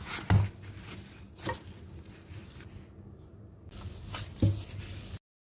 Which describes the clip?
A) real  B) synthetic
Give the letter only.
A